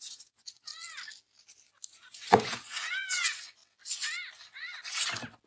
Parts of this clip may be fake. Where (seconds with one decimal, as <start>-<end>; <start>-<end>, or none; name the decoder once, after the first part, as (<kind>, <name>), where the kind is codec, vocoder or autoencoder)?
0.0-0.7 (vocoder, Vocos); 1.9-3.6